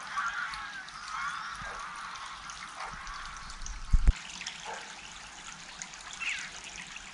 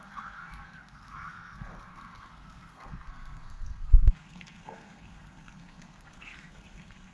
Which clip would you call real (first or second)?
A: first